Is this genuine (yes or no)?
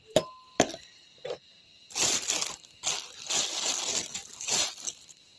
yes